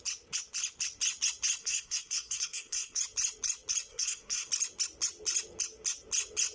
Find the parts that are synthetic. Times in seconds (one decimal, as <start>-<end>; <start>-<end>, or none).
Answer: 1.6-3.0; 3.9-4.5